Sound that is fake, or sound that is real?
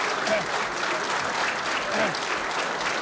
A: real